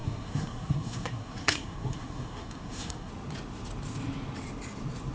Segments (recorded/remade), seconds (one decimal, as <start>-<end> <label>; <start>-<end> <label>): 0.0-3.1 remade; 3.1-5.1 recorded